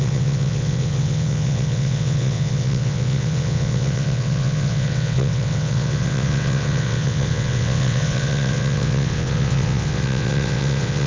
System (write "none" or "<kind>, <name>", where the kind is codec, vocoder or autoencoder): vocoder, WaveNeXt